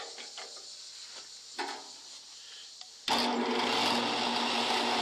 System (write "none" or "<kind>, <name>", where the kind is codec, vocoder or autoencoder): none